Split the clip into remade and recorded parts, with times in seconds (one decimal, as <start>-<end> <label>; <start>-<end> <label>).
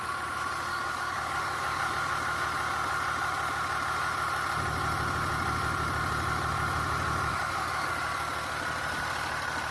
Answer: 0.0-0.7 recorded; 0.7-1.9 remade; 1.9-7.3 recorded; 7.3-7.9 remade; 7.9-9.7 recorded